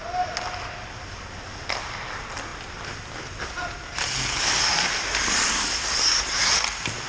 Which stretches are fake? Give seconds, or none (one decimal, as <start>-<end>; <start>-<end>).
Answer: none